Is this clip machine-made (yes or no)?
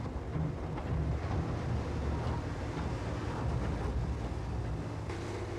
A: no